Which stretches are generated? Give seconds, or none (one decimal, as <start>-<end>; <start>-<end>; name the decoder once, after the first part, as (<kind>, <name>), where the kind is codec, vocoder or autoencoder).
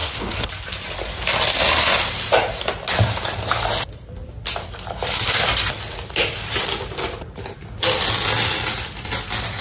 0.0-0.5 (codec, HILCodec)